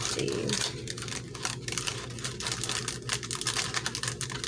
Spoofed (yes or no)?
no